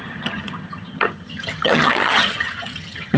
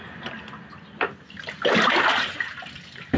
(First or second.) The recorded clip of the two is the second